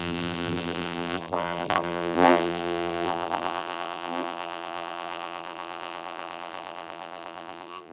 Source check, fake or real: fake